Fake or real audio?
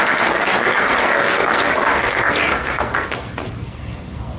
fake